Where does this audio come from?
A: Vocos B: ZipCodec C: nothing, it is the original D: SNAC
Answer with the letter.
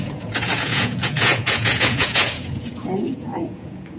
A